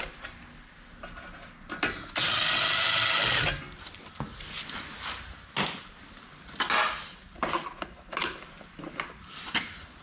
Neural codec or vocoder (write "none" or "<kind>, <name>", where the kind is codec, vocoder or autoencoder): none